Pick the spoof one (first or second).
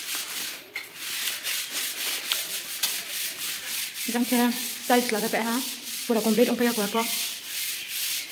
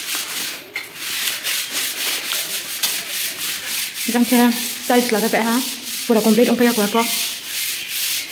first